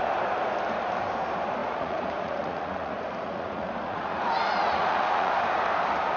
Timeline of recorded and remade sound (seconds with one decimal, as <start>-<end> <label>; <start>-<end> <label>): 0.0-1.6 recorded; 1.6-5.3 remade; 5.3-6.2 recorded